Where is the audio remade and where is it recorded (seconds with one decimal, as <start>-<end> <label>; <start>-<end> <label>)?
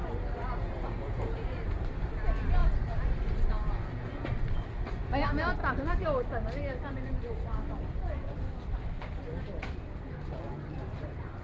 0.0-1.2 remade; 1.2-2.6 recorded; 2.6-3.5 remade; 3.5-11.4 recorded